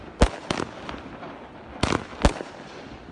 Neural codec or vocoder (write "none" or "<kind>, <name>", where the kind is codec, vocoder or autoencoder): none